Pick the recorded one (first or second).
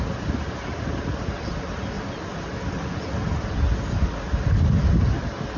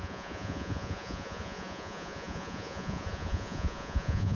first